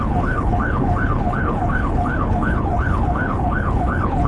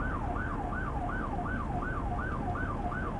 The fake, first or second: first